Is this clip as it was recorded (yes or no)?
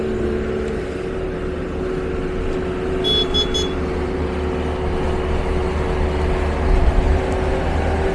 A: yes